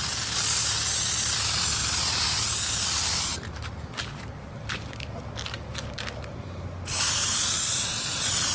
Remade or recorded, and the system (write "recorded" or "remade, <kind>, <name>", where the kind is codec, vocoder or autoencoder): recorded